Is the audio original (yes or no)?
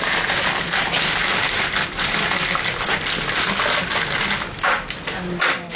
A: yes